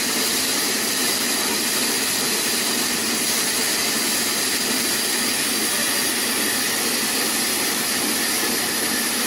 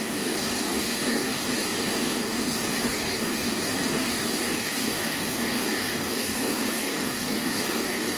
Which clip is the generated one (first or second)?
second